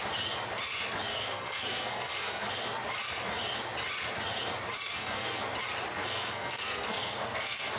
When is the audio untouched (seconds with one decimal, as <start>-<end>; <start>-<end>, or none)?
0.0-1.1; 2.5-4.9; 5.4-5.9